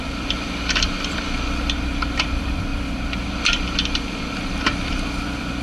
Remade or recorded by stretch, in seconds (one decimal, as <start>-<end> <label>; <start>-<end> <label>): 0.0-5.6 remade